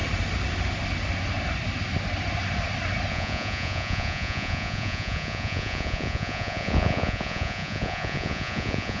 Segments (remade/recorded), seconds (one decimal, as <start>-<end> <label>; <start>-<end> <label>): 0.0-3.1 recorded; 3.1-9.0 remade